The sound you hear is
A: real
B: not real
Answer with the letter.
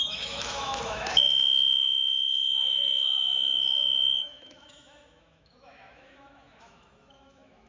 B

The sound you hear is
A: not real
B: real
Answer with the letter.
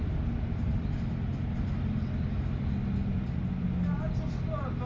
B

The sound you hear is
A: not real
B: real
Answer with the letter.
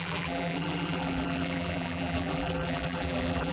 A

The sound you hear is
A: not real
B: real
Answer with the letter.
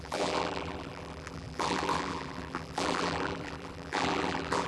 A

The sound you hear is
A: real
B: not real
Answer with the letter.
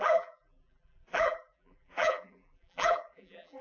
B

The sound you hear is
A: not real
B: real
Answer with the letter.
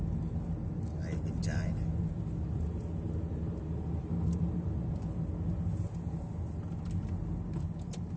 B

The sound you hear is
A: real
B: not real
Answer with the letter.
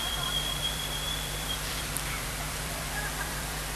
B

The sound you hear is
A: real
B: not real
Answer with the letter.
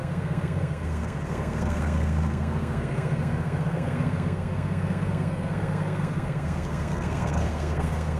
B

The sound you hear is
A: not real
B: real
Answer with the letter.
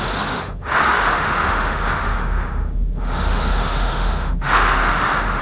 A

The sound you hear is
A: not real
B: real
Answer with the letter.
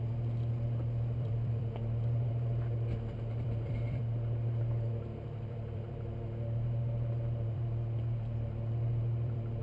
A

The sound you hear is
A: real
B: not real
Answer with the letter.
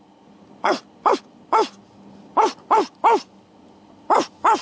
A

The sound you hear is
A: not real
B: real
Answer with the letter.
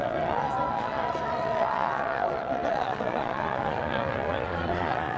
A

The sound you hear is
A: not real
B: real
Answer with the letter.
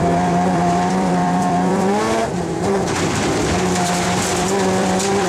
A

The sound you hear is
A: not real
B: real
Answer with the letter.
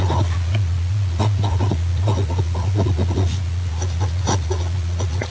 A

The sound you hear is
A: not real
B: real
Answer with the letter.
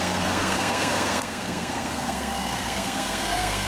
A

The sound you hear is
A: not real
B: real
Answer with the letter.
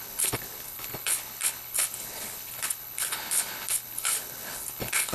A